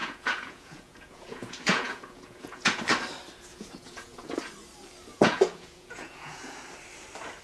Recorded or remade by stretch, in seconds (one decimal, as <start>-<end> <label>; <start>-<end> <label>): 0.0-2.8 remade; 2.8-3.5 recorded; 3.5-4.3 remade; 4.3-5.1 recorded; 5.1-6.6 remade; 6.6-7.4 recorded